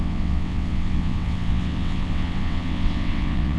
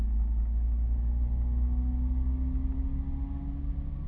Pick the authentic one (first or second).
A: second